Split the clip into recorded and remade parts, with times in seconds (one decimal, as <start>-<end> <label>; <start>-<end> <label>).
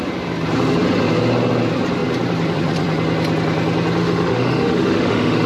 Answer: 0.0-4.0 recorded; 4.0-5.5 remade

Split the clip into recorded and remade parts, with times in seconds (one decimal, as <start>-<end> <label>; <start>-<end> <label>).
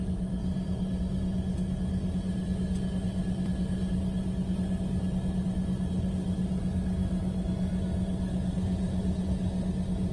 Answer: 0.0-10.1 recorded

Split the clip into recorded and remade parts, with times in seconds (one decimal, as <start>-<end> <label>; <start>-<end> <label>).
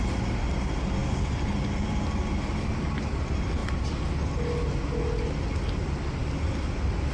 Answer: 0.0-7.1 recorded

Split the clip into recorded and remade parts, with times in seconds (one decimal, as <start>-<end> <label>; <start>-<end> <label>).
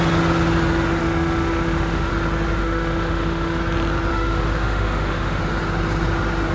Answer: 0.0-1.0 recorded; 1.0-2.1 remade; 2.1-2.6 recorded; 2.6-3.6 remade; 3.6-4.1 recorded; 4.1-5.4 remade; 5.4-6.5 recorded